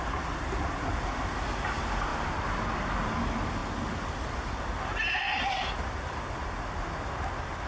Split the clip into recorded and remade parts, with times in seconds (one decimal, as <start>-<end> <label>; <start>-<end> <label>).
0.0-7.7 recorded